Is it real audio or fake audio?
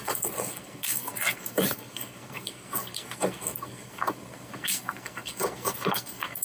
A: fake